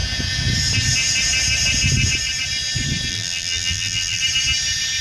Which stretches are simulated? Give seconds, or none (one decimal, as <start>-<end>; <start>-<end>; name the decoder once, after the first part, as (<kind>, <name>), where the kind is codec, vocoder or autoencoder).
3.1-4.2 (vocoder, BigVGAN v2)